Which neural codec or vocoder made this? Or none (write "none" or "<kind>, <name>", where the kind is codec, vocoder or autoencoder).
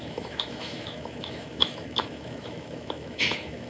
autoencoder, DAC-VAE